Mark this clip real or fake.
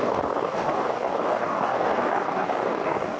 fake